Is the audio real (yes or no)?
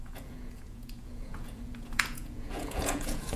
no